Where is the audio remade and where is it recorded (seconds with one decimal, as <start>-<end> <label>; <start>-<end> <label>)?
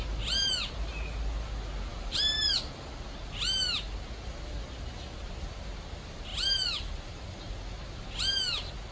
0.0-1.9 recorded; 1.9-2.7 remade; 2.7-6.3 recorded; 6.3-7.4 remade; 7.4-8.9 recorded